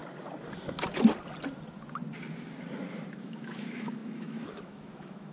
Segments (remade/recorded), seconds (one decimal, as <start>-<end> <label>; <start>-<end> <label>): 0.0-3.2 recorded; 3.2-5.3 remade